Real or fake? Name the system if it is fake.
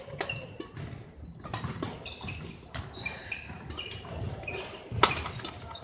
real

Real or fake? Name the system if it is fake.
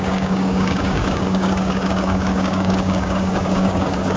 fake, codec, DAC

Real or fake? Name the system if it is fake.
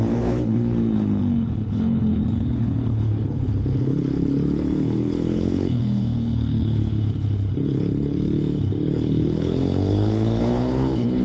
fake, codec, HILCodec